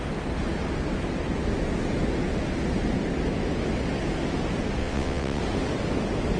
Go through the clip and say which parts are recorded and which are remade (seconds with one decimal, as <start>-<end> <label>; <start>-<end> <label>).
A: 0.0-4.8 recorded; 4.8-5.4 remade; 5.4-6.4 recorded